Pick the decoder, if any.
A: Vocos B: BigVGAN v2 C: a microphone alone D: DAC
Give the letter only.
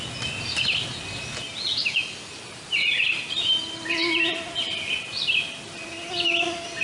C